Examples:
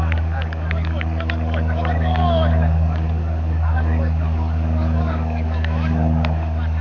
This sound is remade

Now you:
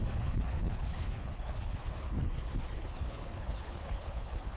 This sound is remade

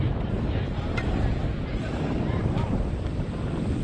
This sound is remade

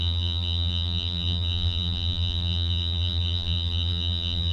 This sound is remade